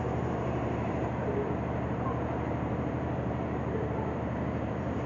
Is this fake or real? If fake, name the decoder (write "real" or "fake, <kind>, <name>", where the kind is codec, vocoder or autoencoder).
fake, vocoder, BigVGAN v2